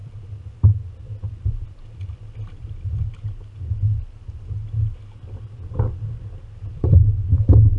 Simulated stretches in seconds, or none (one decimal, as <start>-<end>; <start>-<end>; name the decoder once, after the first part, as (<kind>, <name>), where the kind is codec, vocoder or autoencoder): none

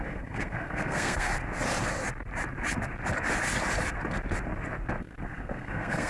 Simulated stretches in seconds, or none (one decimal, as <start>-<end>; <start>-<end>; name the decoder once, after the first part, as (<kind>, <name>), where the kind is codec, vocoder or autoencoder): 0.0-1.3 (codec, SNAC); 5.0-6.1

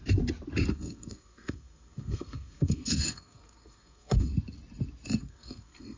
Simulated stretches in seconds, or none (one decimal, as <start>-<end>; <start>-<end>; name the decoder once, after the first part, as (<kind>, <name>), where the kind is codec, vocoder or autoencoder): 0.7-4.3 (codec, SNAC); 5.2-6.0

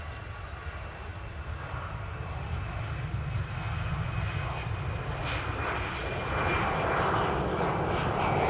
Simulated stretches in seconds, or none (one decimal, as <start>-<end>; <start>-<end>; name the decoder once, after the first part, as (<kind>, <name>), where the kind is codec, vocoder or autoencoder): none